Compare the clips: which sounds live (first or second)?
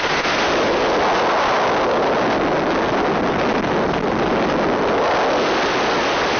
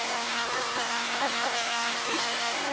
first